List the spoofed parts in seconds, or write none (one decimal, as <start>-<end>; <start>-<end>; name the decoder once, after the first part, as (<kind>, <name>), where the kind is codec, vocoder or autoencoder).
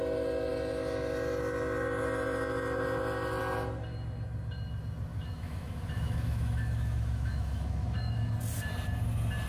5.1-8.3 (autoencoder, DAC-VAE)